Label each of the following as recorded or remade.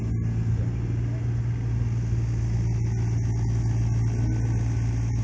recorded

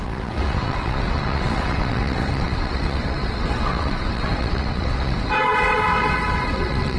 remade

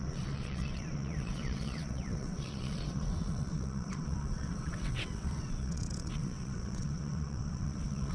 remade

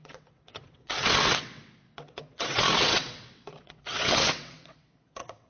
remade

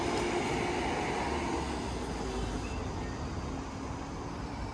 recorded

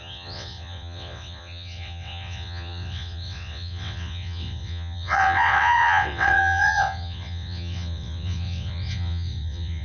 remade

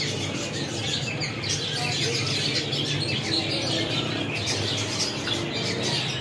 recorded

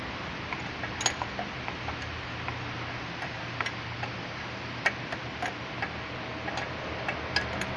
recorded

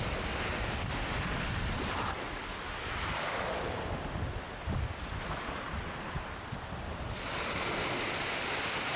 recorded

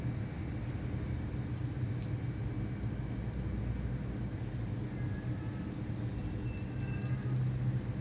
recorded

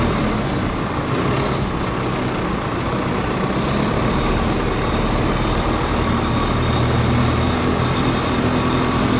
recorded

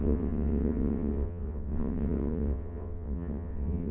remade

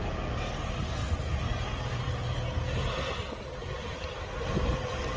recorded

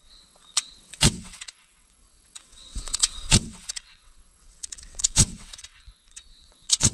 remade